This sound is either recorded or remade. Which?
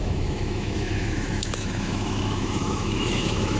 remade